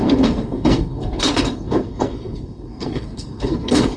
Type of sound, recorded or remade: remade